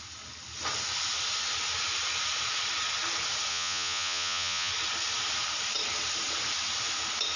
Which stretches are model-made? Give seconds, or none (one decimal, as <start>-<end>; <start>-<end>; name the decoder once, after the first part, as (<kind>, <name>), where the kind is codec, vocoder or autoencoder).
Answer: 3.5-4.7 (vocoder, Vocos)